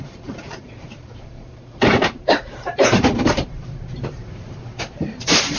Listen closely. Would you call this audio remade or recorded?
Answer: remade